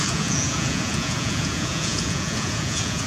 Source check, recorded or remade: remade